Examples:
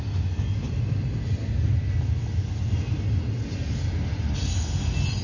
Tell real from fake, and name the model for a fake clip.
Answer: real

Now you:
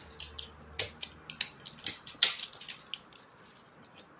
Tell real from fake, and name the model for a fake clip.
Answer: real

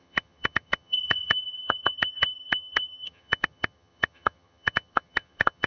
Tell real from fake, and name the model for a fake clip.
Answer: fake, vocoder, HiFi-GAN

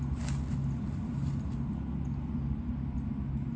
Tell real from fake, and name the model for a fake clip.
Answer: real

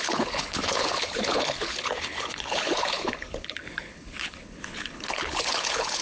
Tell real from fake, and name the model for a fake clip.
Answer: fake, codec, HILCodec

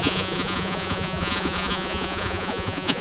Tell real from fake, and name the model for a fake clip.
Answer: fake, vocoder, Vocos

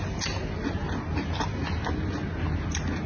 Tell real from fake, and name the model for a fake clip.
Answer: real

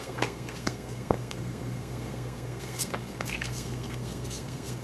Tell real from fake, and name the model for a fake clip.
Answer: fake, codec, SNAC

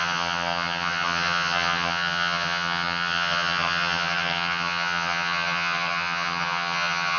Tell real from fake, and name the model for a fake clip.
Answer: fake, vocoder, HiFi-GAN